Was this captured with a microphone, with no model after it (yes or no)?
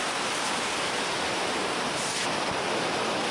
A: yes